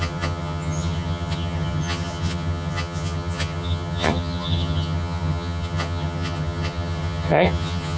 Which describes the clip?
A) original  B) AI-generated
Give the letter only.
B